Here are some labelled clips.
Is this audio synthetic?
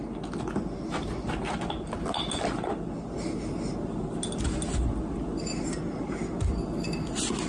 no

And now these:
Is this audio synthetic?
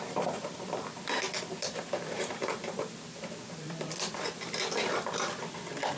yes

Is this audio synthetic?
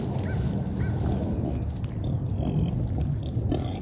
no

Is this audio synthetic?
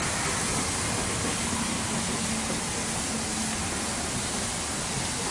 no